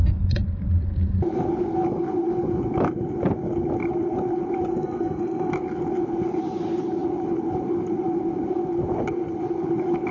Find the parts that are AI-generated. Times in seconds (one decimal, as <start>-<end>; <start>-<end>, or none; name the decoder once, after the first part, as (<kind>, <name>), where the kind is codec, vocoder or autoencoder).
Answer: 4.7-5.5 (codec, SNAC)